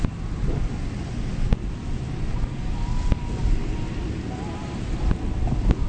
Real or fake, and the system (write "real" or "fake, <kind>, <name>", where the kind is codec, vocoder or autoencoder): real